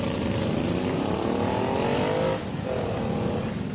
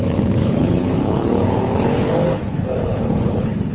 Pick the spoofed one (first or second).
second